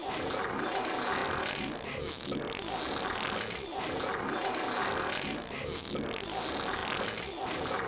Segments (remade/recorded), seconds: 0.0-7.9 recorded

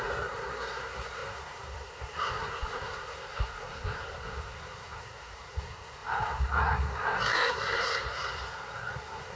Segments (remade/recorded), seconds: 0.0-9.3 remade

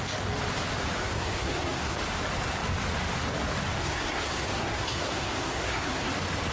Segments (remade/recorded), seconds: 0.0-1.0 recorded; 1.0-2.0 remade; 2.0-3.8 recorded; 3.8-6.1 remade; 6.1-6.5 recorded

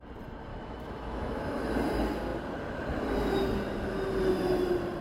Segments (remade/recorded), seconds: 0.0-0.5 recorded; 0.5-1.4 remade; 1.4-5.0 recorded